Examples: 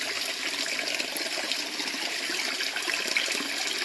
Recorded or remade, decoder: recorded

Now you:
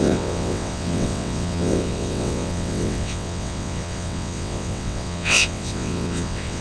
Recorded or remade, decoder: remade, vocoder, WaveNeXt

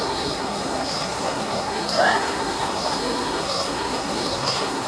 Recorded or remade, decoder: remade, codec, SNAC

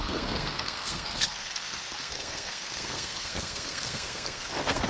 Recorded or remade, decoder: remade, codec, SNAC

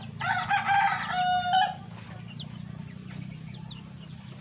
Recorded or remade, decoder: recorded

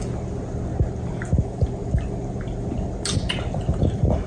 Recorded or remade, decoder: recorded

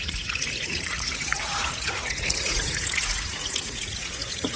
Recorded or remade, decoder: remade, vocoder, Vocos